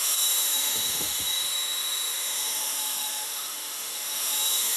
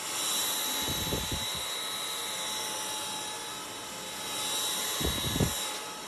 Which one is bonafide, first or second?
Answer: second